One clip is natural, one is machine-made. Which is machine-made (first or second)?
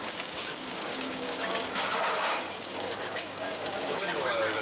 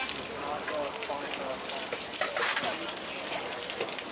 first